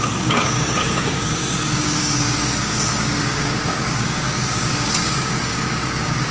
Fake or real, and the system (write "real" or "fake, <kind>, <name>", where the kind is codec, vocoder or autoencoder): fake, codec, DAC